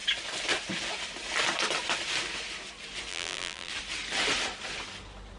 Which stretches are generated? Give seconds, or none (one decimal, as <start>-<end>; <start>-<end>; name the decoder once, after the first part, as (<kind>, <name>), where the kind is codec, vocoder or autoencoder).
3.1-3.7 (vocoder, BigVGAN v2)